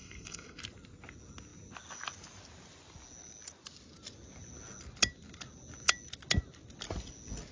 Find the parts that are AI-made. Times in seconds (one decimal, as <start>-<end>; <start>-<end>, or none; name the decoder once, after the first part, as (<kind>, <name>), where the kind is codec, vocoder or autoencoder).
0.0-0.6 (codec, SNAC)